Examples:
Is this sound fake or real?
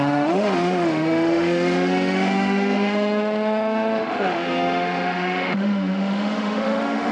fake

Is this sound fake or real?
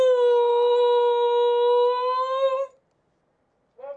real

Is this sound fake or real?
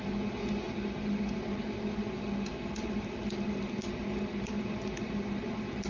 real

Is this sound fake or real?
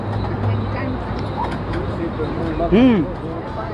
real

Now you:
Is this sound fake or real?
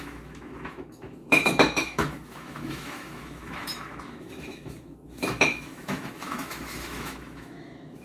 fake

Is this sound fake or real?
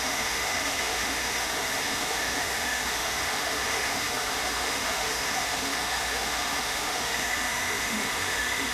fake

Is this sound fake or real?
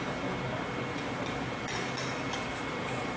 real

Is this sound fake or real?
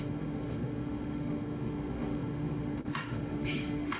fake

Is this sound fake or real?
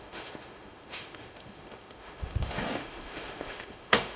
fake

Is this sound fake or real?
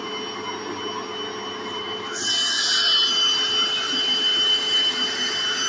real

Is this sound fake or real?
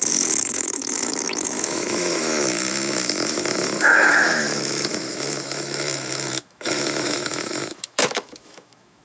fake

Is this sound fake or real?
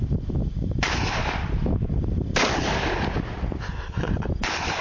real